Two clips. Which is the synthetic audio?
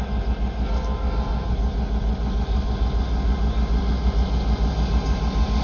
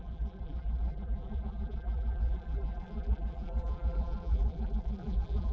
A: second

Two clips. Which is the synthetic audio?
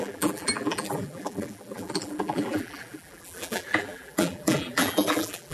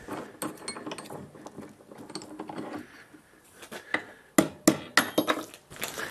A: first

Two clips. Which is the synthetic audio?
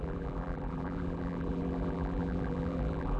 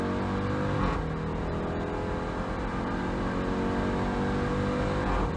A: first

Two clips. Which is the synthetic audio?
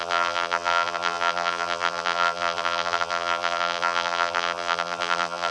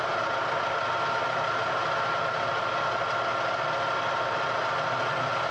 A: first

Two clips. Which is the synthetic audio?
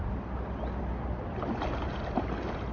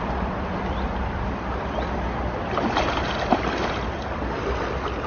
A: second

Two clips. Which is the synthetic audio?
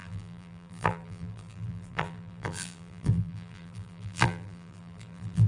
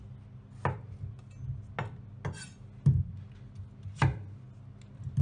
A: first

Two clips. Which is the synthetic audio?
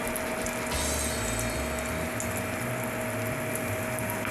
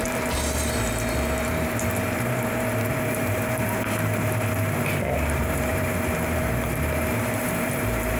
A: second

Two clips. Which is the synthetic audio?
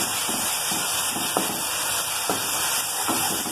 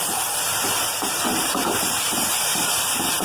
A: second